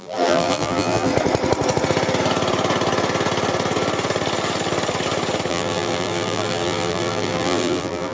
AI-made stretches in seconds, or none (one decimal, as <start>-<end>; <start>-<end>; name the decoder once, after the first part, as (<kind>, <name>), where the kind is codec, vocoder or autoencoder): 0.0-1.1 (vocoder, BigVGAN v2); 5.5-8.1